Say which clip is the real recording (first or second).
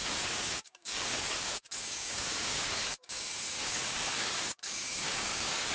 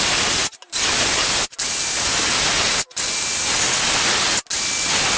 second